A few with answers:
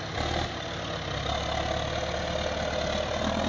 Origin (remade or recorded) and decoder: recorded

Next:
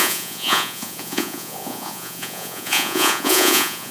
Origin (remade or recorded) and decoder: remade, vocoder, Vocos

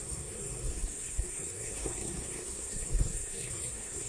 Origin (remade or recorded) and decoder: remade, codec, SNAC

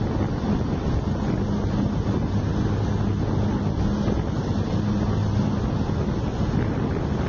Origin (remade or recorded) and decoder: recorded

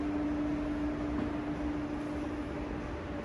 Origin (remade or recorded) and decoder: recorded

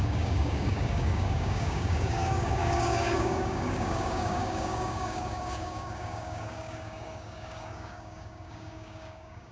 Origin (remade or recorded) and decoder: remade, codec, DAC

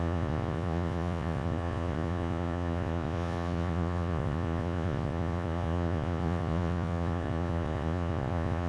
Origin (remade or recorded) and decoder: remade, vocoder, Vocos